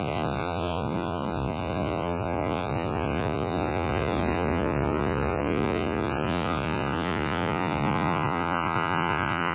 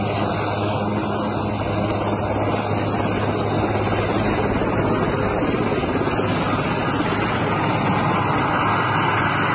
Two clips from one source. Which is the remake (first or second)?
first